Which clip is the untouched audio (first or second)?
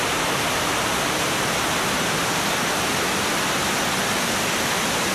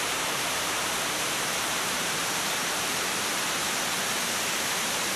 first